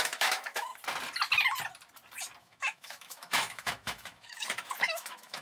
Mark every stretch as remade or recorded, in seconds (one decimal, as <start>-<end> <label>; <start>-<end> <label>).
0.0-0.7 remade; 0.7-2.4 recorded; 2.4-5.4 remade